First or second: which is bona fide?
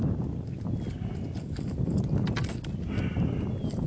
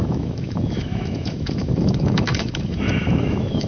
first